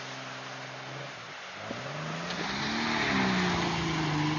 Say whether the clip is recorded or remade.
recorded